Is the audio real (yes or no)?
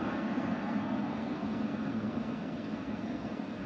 no